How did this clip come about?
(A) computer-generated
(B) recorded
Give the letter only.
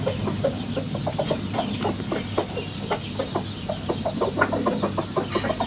B